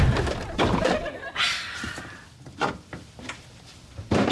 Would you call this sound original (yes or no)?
no